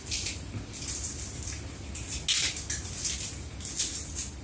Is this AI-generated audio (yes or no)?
no